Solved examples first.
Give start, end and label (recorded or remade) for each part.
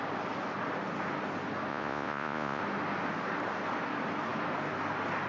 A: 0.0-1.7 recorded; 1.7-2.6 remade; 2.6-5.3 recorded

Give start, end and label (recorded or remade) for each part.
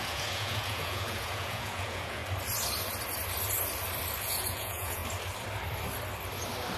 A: 0.0-2.2 remade; 2.2-4.2 recorded; 4.2-5.0 remade; 5.0-6.8 recorded